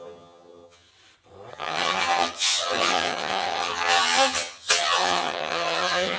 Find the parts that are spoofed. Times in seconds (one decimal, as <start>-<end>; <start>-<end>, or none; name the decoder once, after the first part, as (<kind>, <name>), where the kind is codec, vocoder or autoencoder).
0.0-0.9 (vocoder, HiFi-GAN); 1.5-6.2